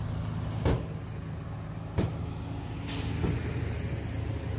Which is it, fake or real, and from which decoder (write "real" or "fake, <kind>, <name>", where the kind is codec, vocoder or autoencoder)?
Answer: real